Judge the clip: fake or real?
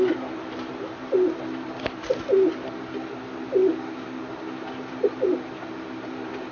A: real